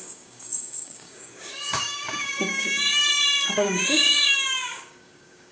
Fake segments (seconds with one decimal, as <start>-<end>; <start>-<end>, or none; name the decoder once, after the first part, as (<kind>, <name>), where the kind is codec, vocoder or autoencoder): 0.0-3.0 (codec, DAC); 3.5-5.5